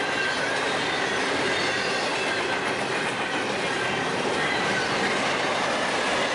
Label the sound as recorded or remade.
recorded